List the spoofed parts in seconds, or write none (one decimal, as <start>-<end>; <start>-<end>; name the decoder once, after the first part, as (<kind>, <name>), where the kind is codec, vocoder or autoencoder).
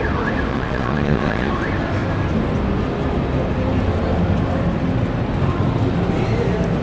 0.5-1.5 (vocoder, Vocos)